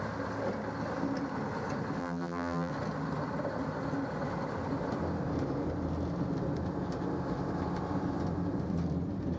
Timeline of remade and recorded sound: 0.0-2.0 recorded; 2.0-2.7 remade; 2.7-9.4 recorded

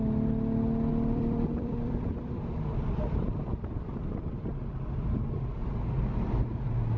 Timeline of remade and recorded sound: 0.0-0.9 recorded; 0.9-4.0 remade; 4.0-7.0 recorded

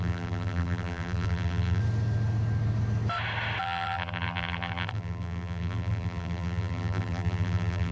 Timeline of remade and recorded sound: 0.0-1.8 remade; 1.8-3.6 recorded; 3.6-7.9 remade

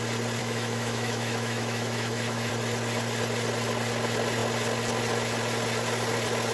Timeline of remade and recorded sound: 0.0-0.4 recorded; 0.4-2.5 remade; 2.5-6.5 recorded

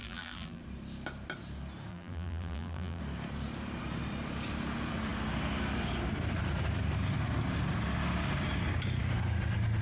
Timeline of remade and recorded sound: 0.0-0.6 remade; 0.6-1.9 recorded; 1.9-3.0 remade; 3.0-9.8 recorded

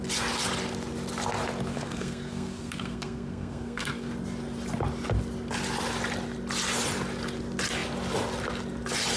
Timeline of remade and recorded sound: 0.0-1.7 recorded; 1.7-4.1 remade; 4.1-9.2 recorded

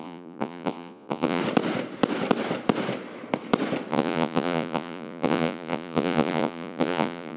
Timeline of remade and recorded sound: 0.0-1.4 remade; 1.4-3.9 recorded; 3.9-7.4 remade